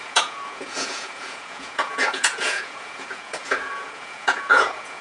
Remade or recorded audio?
remade